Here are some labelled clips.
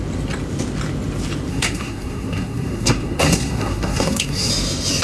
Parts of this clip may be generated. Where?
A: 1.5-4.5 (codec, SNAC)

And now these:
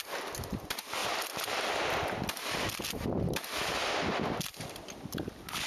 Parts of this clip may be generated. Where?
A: none

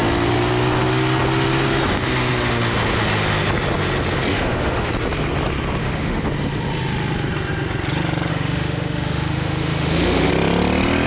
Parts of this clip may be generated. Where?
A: 4.3-4.9 (autoencoder, DAC-VAE); 5.8-6.3; 8.3-10.3

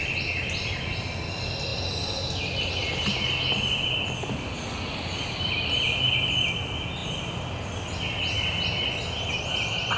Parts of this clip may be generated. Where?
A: none

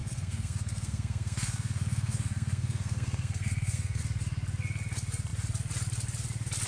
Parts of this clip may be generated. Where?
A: 0.0-4.0 (codec, SNAC)

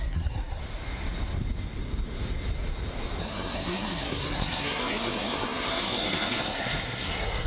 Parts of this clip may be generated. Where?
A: 0.0-0.6 (codec, SNAC); 3.2-7.5